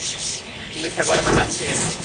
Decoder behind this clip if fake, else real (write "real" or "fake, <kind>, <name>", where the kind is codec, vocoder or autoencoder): fake, codec, HILCodec